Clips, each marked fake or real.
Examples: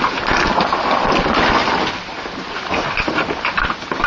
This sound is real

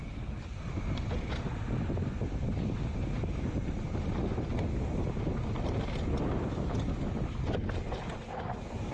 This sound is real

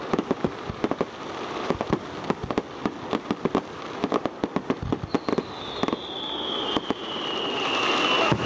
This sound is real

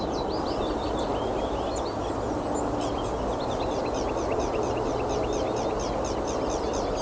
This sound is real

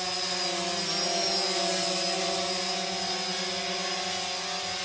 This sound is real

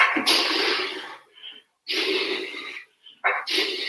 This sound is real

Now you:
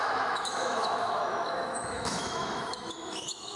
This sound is fake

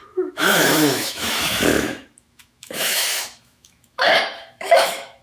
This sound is fake